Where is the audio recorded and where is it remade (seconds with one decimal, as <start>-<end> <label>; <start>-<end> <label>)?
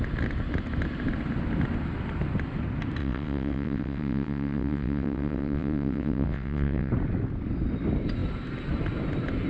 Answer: 0.0-3.0 recorded; 3.0-6.9 remade; 6.9-9.5 recorded